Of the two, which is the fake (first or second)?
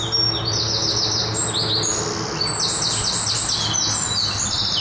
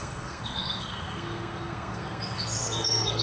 second